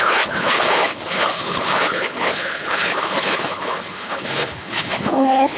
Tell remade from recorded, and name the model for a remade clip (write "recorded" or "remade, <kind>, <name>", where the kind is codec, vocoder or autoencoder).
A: remade, codec, HILCodec